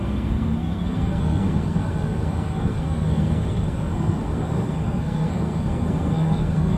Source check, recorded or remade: remade